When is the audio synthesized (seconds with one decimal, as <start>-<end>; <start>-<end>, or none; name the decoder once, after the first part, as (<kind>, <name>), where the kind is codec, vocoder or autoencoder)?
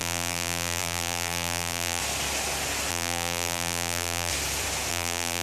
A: 0.0-2.0 (vocoder, BigVGAN v2); 2.9-4.3; 4.9-5.4